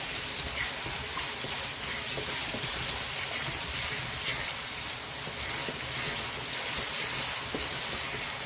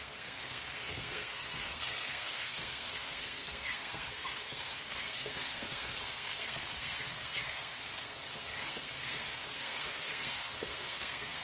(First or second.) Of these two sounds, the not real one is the second